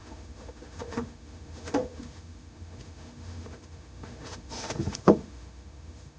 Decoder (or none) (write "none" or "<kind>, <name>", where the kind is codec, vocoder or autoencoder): autoencoder, DAC-VAE